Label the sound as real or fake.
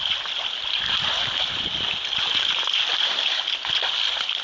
real